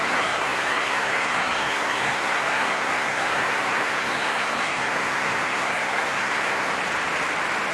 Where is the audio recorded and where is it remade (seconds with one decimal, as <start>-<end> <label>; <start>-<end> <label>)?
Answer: 0.0-6.7 remade; 6.7-7.7 recorded

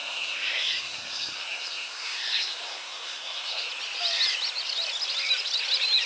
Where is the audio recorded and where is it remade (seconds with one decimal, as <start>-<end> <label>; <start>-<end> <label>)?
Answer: 0.0-3.7 remade; 3.7-6.1 recorded

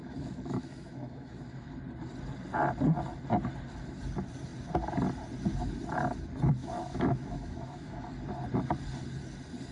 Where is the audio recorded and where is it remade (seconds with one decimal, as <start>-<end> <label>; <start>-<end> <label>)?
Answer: 0.0-1.7 remade; 1.7-6.6 recorded; 6.6-8.1 remade; 8.1-9.7 recorded